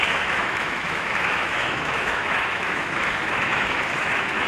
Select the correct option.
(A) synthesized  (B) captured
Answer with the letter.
A